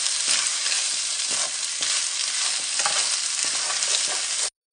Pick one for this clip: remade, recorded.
recorded